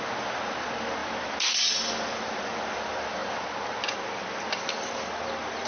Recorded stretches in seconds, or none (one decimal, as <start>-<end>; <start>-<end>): 0.0-5.7